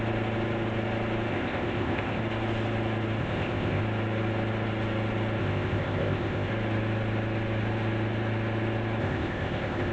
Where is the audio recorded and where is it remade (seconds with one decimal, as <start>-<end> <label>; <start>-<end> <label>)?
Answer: 0.0-1.3 recorded; 1.3-2.2 remade; 2.2-3.2 recorded; 3.2-3.8 remade; 3.8-5.4 recorded; 5.4-6.5 remade; 6.5-9.0 recorded; 9.0-9.9 remade